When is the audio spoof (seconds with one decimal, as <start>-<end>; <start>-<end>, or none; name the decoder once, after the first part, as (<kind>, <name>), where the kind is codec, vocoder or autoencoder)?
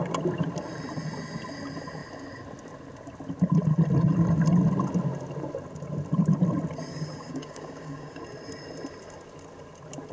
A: 6.9-8.2 (codec, DAC)